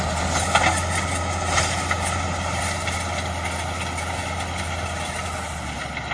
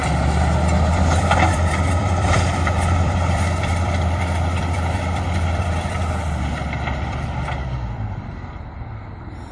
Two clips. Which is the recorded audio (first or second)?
first